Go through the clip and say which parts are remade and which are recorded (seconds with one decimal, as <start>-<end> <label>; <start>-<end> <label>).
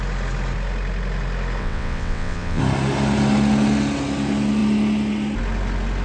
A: 0.0-1.6 recorded; 1.6-2.6 remade; 2.6-6.0 recorded